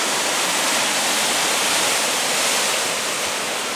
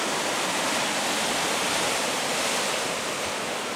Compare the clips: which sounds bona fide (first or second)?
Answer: second